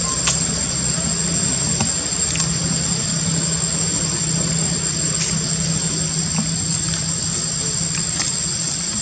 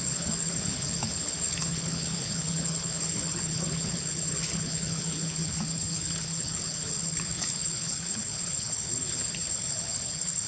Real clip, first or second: first